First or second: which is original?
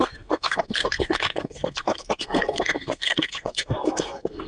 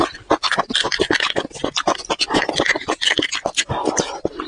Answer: second